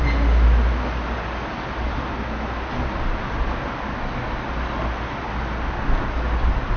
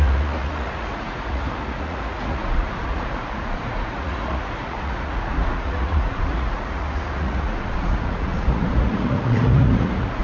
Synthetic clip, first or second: second